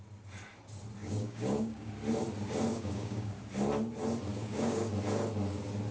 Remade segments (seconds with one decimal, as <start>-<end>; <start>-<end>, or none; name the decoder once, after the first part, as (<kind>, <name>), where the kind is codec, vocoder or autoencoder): 1.0-1.9 (codec, DAC); 2.7-3.3; 4.3-4.9